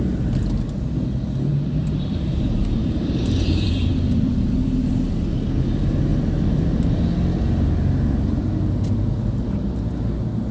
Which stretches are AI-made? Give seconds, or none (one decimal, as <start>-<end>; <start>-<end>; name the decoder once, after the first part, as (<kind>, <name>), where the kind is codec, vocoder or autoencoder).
1.5-4.9 (vocoder, BigVGAN v2); 6.1-7.0